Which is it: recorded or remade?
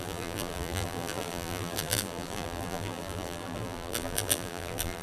remade